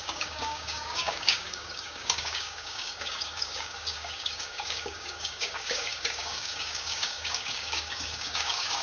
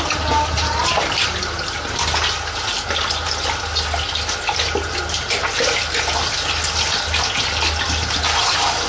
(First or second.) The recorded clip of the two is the second